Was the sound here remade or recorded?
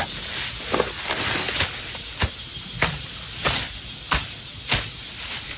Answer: recorded